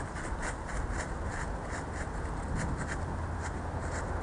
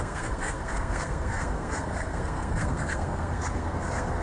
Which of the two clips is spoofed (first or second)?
second